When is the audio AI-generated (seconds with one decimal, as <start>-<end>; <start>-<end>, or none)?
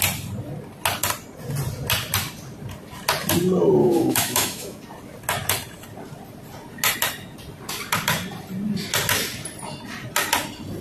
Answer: 3.8-4.8